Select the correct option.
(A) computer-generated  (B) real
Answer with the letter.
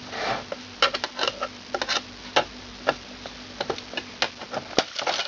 B